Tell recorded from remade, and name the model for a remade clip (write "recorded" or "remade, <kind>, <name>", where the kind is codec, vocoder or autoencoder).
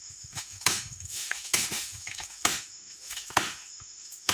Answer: remade, autoencoder, DAC-VAE